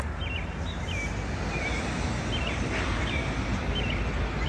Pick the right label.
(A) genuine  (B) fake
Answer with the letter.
A